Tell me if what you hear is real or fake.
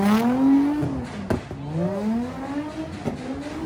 real